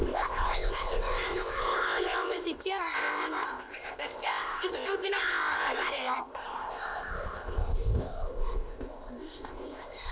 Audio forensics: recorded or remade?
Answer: remade